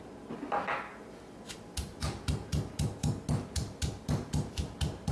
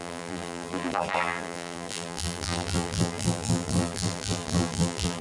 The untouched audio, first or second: first